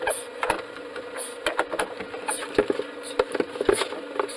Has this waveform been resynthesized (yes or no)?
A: no